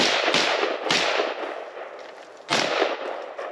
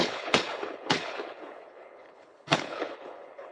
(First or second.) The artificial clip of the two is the second